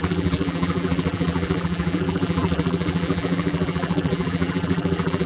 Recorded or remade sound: remade